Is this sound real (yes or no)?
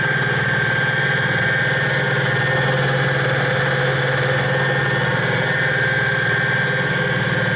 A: yes